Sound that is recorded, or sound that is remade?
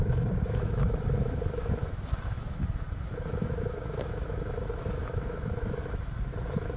remade